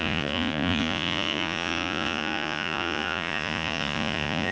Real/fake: fake